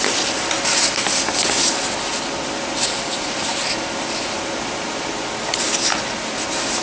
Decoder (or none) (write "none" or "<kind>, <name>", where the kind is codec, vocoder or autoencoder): none